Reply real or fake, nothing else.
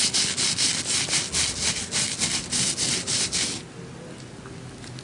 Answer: real